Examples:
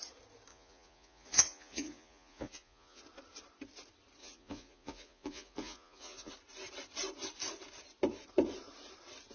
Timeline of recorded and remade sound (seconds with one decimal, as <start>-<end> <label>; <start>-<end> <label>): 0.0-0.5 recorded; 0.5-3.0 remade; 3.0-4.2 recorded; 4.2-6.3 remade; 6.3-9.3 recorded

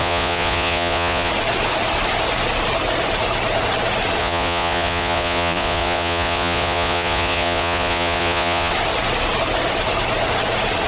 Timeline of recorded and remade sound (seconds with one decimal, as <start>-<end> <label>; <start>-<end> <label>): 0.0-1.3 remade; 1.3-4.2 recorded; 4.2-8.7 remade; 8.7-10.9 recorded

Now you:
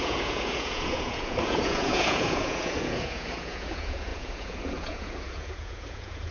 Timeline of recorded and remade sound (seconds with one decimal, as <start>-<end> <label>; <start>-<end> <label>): 0.0-6.3 remade

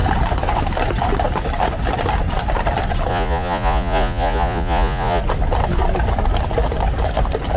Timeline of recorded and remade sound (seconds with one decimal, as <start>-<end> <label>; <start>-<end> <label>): 0.0-3.1 recorded; 3.1-5.2 remade; 5.2-7.6 recorded

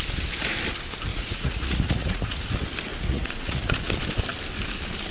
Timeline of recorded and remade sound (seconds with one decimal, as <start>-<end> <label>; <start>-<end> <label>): 0.0-1.1 recorded; 1.1-2.5 remade; 2.5-2.9 recorded; 2.9-3.9 remade; 3.9-5.1 recorded

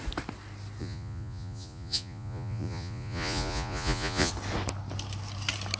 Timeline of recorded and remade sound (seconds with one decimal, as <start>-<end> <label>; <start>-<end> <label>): 0.0-0.8 recorded; 0.8-4.3 remade; 4.3-5.8 recorded

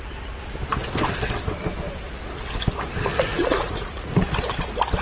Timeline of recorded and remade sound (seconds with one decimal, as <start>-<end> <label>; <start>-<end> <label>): 0.0-3.3 recorded; 3.3-4.1 remade; 4.1-5.0 recorded